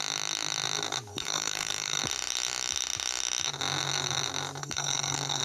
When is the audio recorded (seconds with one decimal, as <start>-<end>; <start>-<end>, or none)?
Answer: 0.0-1.1; 2.0-4.6